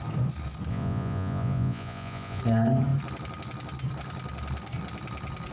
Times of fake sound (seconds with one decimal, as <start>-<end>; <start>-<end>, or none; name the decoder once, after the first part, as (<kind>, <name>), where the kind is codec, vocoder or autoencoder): 0.7-2.4 (vocoder, Vocos)